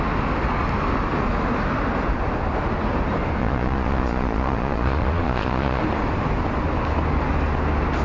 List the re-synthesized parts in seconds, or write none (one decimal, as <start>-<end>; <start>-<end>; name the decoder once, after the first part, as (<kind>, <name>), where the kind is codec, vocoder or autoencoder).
3.4-5.8 (vocoder, Vocos)